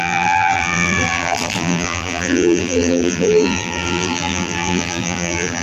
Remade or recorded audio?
remade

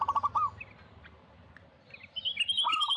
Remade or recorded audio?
recorded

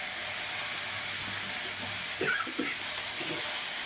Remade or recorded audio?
recorded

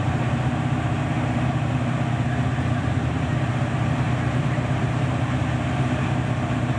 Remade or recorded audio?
remade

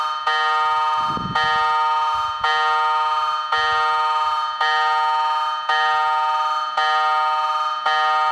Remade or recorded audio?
recorded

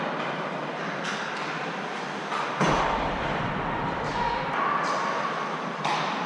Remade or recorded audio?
remade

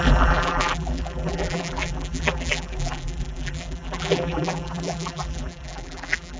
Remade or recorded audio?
remade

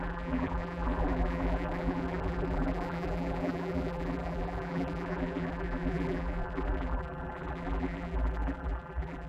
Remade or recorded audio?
remade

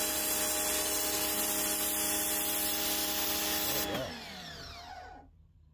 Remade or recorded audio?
recorded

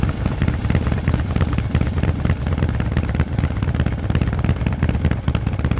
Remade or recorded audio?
recorded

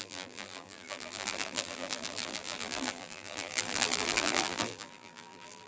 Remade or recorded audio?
remade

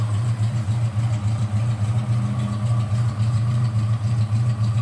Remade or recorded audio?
remade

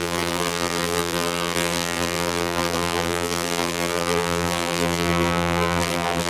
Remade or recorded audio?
remade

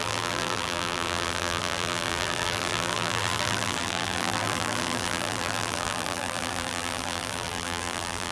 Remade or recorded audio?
remade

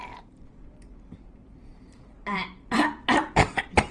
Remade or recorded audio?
remade